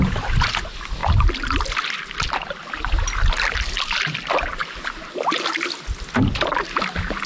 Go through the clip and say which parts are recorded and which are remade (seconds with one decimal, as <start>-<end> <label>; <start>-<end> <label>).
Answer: 0.0-7.3 recorded